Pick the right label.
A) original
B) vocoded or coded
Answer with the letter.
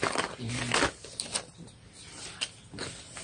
A